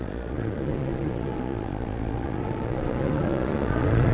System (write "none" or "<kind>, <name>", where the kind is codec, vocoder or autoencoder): vocoder, Vocos